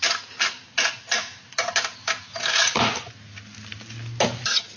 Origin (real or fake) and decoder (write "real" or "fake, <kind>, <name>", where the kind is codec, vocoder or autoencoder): real